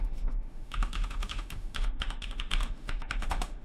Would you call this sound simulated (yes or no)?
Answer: yes